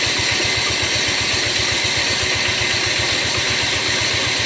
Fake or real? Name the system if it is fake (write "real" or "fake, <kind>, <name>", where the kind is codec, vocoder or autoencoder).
real